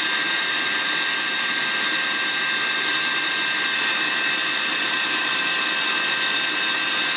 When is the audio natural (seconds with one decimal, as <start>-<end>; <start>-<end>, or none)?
0.0-4.7; 5.4-7.2